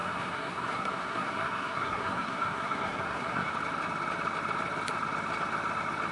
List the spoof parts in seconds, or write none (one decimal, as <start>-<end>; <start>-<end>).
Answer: 0.0-3.5